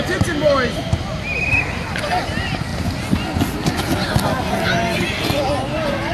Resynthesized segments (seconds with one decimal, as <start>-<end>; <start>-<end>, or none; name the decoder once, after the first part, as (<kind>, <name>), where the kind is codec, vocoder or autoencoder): none